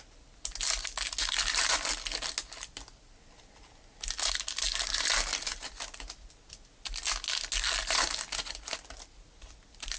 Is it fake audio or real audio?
real